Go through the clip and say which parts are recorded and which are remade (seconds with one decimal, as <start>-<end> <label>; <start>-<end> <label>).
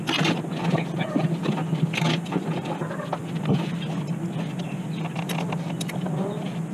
0.0-1.2 recorded; 1.2-3.8 remade; 3.8-6.7 recorded